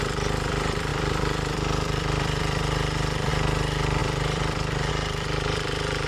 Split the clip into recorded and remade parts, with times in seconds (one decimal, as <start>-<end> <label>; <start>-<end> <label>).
0.0-6.1 remade